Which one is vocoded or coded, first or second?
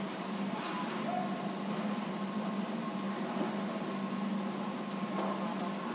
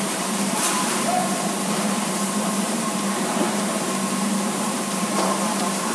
second